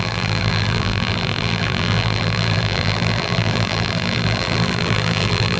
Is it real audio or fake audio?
fake